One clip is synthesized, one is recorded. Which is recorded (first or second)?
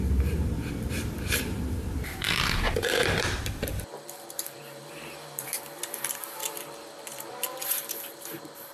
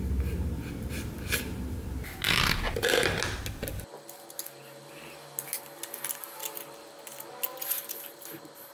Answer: second